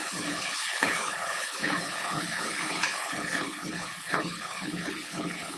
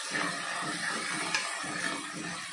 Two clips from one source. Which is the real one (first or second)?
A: second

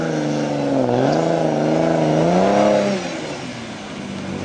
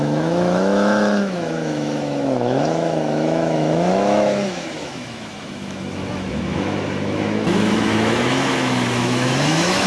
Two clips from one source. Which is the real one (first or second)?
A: first